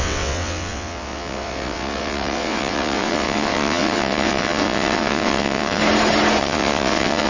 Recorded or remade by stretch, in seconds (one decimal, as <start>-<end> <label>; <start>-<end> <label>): 0.0-5.8 remade; 5.8-6.4 recorded; 6.4-7.3 remade